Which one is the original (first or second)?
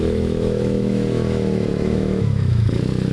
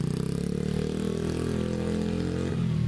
second